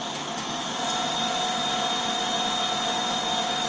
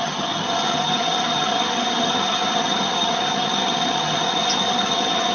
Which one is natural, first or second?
first